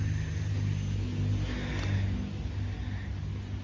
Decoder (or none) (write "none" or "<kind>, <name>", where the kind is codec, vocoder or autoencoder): none